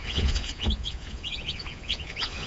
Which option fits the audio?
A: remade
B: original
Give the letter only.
A